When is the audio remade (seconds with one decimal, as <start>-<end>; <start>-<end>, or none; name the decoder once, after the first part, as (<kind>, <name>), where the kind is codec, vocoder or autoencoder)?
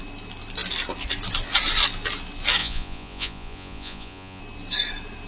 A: 2.6-4.4 (vocoder, Vocos)